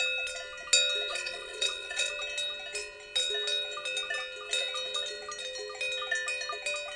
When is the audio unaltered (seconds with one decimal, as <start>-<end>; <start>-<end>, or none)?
0.0-1.1; 2.1-7.0

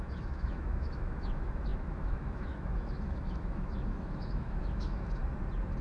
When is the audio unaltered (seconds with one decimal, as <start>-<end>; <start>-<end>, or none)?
5.2-5.8

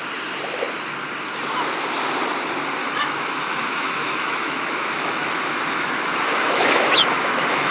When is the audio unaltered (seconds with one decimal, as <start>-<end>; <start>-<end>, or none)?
0.0-2.8

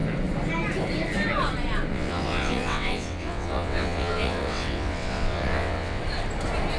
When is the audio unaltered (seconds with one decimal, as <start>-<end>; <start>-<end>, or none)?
0.0-1.9; 6.0-6.8

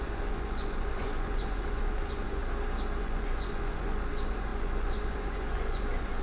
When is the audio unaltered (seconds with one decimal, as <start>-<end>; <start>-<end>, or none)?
2.4-3.0